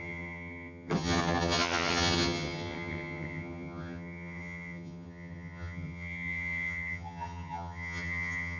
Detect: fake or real fake